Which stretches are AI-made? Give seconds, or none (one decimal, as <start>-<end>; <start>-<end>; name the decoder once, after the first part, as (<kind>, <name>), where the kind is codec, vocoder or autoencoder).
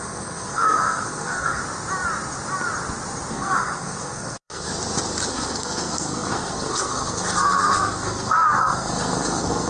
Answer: 0.0-1.6 (codec, SNAC); 3.3-4.7; 5.3-9.7